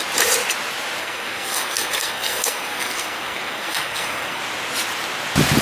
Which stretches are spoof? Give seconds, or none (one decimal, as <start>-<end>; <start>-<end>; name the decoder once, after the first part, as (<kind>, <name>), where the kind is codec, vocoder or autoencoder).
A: 1.0-4.4 (codec, SNAC)